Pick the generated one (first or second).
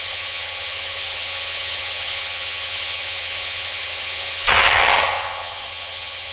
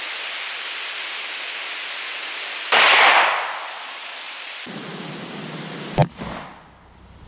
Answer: first